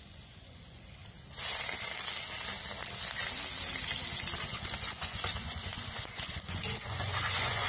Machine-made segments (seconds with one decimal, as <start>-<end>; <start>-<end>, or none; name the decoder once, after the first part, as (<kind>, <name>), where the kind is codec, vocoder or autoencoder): 0.0-1.0 (vocoder, Vocos); 4.5-7.7